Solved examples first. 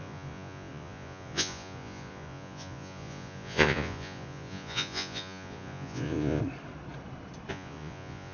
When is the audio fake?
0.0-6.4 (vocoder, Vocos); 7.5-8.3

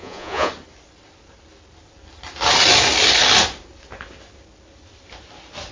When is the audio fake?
0.0-0.5 (vocoder, Vocos)